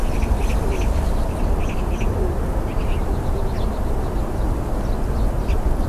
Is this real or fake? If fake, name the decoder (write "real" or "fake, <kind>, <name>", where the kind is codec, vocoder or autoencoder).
real